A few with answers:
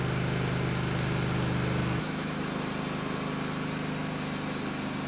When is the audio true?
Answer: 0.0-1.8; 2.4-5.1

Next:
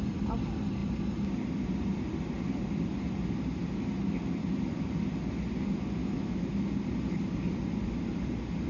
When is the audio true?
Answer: 0.0-6.0; 6.7-8.7

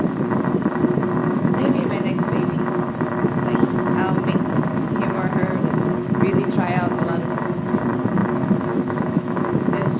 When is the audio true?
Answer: 0.0-1.2; 1.9-8.2; 9.5-10.0

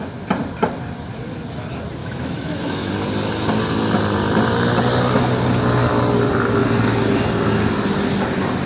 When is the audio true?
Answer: 0.0-2.0; 2.9-8.7